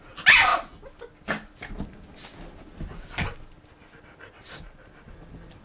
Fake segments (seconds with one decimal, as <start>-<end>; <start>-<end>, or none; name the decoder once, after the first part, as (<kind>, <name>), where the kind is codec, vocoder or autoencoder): none